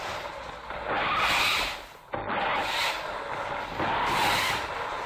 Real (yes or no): yes